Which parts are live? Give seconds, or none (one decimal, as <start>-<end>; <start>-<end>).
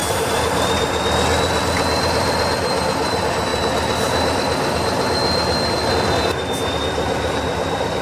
1.0-8.0